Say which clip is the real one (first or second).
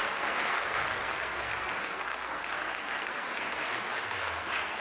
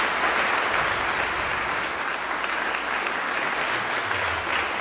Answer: second